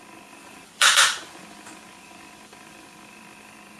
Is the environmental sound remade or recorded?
remade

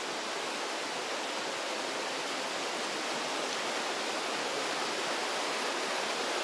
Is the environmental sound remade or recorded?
recorded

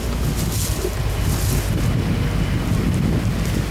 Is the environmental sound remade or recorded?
recorded